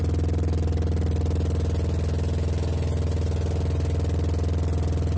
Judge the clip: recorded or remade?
recorded